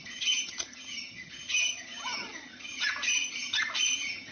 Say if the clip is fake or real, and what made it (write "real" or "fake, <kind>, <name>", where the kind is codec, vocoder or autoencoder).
fake, vocoder, HiFi-GAN